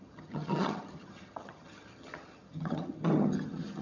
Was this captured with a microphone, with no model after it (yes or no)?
no